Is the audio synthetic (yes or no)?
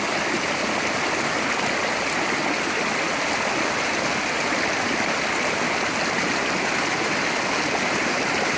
no